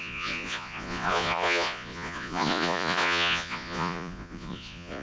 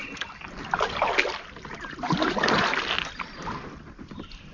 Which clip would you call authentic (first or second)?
second